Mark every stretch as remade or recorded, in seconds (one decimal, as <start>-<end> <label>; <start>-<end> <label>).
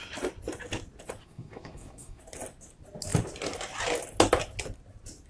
0.0-1.2 recorded; 1.2-2.2 remade; 2.2-5.3 recorded